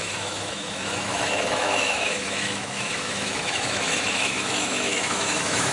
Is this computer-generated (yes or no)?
yes